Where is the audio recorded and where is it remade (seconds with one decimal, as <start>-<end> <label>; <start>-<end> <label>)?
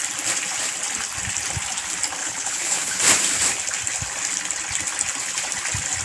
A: 0.0-2.2 recorded; 2.2-3.0 remade; 3.0-6.0 recorded